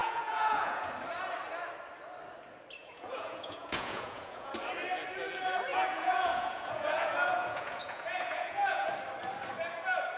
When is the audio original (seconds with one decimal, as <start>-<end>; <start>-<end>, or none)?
0.9-2.8; 4.5-5.7; 8.9-10.2

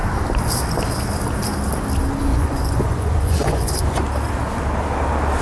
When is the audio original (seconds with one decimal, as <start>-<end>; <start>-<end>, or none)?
0.0-2.3; 4.0-5.4

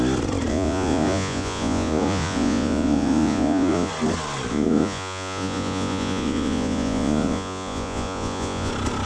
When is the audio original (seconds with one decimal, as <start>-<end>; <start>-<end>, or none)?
0.0-0.5; 3.9-4.5; 8.7-9.1

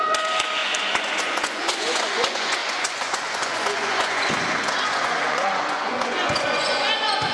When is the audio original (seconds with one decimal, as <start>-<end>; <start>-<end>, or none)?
none